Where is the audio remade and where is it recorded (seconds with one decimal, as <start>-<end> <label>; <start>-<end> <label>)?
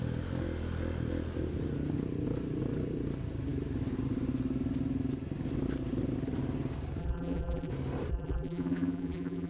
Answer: 0.0-7.0 recorded; 7.0-7.7 remade; 7.7-8.1 recorded; 8.1-9.5 remade